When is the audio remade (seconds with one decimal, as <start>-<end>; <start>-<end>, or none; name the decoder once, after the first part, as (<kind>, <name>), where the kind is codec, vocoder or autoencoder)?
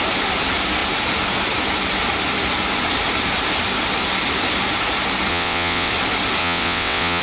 5.3-5.9 (vocoder, WaveNeXt); 6.4-7.2